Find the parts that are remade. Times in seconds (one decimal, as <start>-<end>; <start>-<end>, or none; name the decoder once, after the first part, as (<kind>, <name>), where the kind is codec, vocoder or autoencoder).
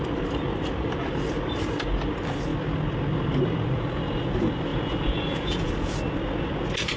4.7-5.7 (vocoder, Vocos)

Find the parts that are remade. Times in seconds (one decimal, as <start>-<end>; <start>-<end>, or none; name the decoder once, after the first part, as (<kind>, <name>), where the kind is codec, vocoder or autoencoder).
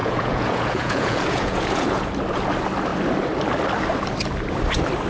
0.0-2.1 (vocoder, Vocos)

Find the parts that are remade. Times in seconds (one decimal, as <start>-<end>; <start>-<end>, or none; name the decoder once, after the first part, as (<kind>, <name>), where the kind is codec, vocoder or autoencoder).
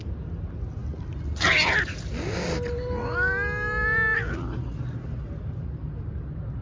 none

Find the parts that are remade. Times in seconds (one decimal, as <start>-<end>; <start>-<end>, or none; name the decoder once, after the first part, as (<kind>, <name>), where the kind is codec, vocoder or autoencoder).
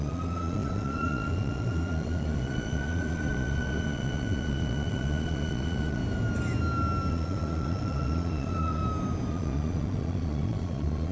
0.0-6.0 (vocoder, Vocos); 7.1-8.8; 9.3-11.1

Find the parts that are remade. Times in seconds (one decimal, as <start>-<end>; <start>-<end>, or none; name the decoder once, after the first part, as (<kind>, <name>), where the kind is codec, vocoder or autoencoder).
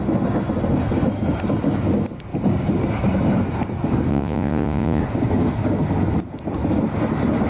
4.1-5.0 (vocoder, Vocos)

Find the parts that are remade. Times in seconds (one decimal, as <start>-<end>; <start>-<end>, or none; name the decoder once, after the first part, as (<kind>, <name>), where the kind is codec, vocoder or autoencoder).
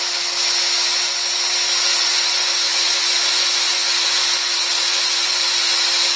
1.9-5.6 (vocoder, Vocos)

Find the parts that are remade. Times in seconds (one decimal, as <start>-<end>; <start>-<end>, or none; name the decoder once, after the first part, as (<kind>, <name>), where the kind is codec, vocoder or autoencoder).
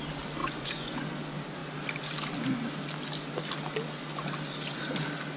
0.4-1.0 (vocoder, Vocos)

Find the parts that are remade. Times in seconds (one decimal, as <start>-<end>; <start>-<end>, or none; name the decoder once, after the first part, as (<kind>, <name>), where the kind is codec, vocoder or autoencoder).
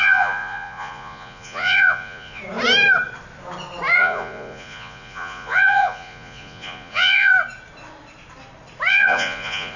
0.0-2.4 (vocoder, Vocos); 4.0-7.3; 8.9-9.8